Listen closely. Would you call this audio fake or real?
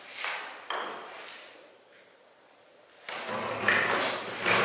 real